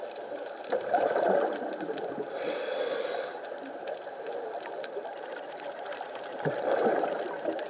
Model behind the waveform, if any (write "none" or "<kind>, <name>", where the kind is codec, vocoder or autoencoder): vocoder, BigVGAN v2